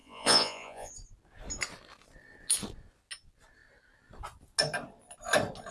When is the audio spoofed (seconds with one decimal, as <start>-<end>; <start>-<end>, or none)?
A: 0.0-0.9